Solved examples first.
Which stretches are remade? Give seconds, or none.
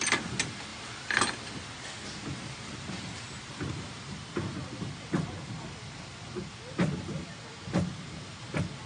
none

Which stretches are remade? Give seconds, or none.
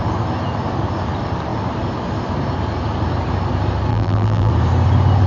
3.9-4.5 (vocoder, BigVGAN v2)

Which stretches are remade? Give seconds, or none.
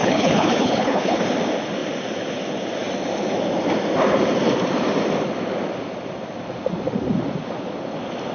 0.0-1.2 (codec, HILCodec)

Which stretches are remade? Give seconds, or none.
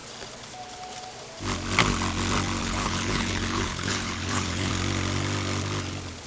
2.6-4.7 (codec, HILCodec)